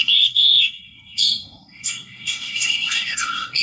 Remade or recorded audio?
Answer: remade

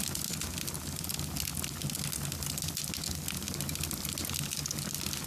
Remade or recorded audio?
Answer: recorded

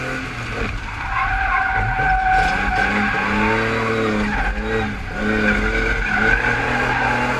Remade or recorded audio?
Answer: recorded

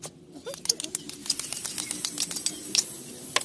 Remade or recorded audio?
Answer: recorded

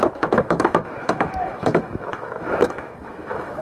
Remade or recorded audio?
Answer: remade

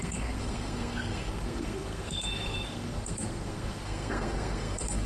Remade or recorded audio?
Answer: remade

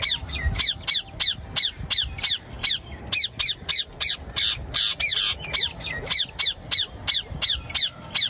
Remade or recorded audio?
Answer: recorded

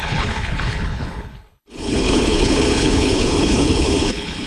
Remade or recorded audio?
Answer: remade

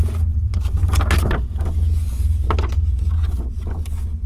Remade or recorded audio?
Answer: recorded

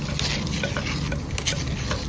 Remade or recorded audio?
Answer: recorded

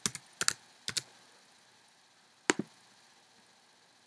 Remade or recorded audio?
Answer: recorded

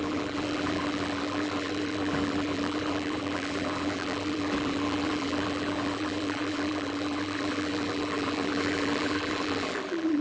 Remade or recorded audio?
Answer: remade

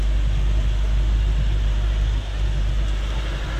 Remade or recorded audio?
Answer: recorded